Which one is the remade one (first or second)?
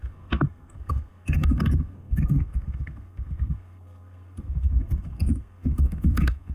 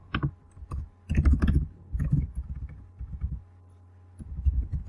first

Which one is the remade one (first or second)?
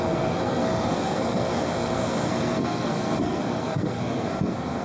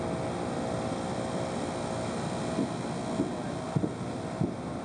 first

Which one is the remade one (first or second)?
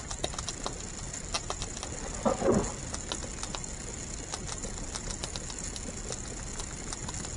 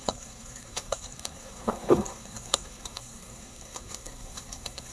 second